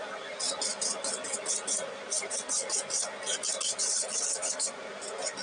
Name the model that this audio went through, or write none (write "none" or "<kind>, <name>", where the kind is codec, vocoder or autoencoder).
none